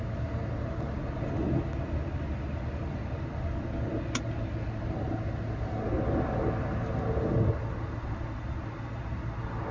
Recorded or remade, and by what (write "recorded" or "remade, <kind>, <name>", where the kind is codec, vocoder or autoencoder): recorded